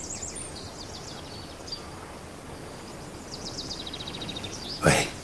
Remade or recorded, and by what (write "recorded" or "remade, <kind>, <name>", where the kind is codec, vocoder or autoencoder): recorded